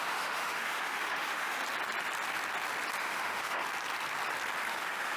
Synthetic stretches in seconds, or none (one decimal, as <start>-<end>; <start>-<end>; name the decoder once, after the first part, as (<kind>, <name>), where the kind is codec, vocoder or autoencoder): 0.0-1.6 (autoencoder, DAC-VAE); 3.0-3.6; 4.7-5.2